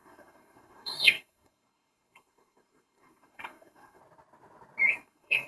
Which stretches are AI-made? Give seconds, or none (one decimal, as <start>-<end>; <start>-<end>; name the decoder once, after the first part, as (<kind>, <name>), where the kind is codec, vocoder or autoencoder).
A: 0.0-4.0 (codec, SNAC); 4.9-5.5